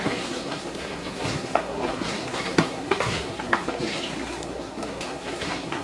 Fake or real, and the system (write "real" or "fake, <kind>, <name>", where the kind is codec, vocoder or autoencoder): fake, codec, SNAC